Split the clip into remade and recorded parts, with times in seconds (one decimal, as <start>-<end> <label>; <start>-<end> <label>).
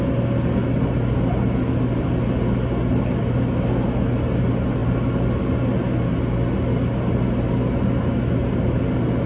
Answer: 0.0-9.3 recorded